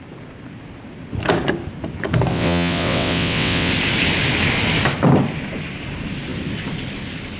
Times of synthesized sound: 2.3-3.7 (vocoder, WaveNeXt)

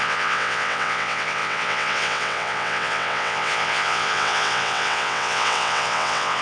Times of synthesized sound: 0.0-6.4 (vocoder, WaveNeXt)

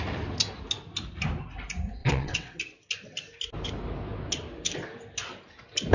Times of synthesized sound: 2.0-2.6 (vocoder, WaveNeXt)

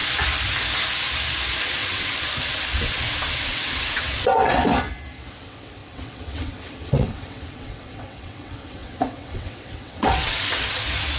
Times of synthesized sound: 1.6-4.7 (vocoder, WaveNeXt); 5.3-11.2

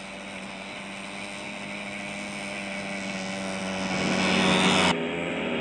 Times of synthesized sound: none

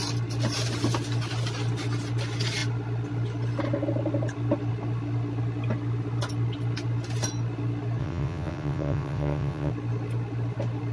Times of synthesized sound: 8.0-9.7 (vocoder, WaveNeXt)

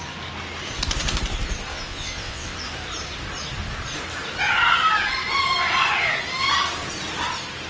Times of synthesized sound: 1.7-2.6 (vocoder, WaveNeXt)